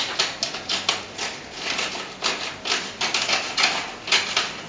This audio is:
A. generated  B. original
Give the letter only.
B